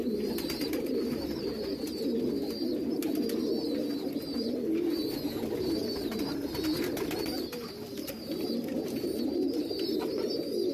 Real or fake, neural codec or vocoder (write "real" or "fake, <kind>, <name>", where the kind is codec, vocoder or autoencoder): real